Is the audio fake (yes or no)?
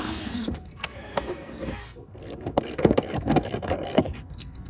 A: yes